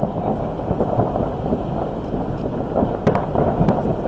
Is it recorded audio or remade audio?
recorded